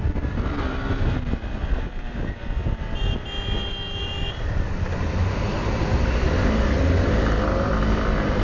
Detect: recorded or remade recorded